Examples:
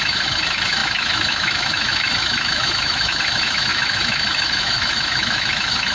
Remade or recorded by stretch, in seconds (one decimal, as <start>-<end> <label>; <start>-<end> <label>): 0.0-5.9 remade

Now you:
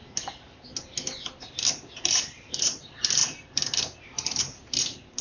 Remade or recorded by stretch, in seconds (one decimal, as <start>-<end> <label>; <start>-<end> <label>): 0.0-1.7 recorded; 1.7-5.2 remade

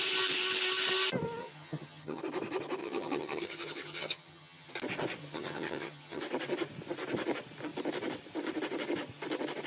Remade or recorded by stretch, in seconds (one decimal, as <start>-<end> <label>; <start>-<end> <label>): 0.0-1.4 recorded; 1.4-2.2 remade; 2.2-2.8 recorded; 2.8-4.7 remade; 4.7-5.2 recorded; 5.2-6.2 remade; 6.2-9.7 recorded

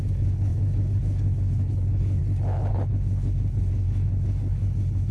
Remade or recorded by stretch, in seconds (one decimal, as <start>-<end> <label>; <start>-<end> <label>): 0.0-2.2 remade; 2.2-2.7 recorded; 2.7-5.1 remade

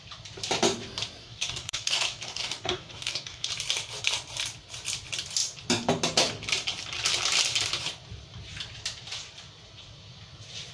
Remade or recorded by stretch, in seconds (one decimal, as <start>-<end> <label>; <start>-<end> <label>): 0.0-1.2 recorded; 1.2-3.5 remade; 3.5-10.7 recorded